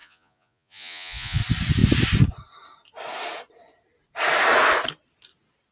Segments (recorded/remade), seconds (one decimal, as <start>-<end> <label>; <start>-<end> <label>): 0.0-1.4 remade; 1.4-5.7 recorded